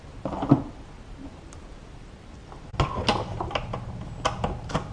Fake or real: real